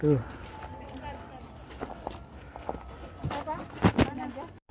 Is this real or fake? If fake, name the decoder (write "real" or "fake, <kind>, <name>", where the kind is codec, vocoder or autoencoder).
real